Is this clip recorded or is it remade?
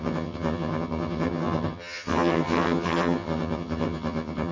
remade